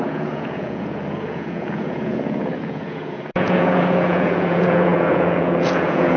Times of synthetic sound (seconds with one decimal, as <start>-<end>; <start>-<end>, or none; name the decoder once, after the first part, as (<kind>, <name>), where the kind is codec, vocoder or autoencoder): 0.0-6.2 (vocoder, Vocos)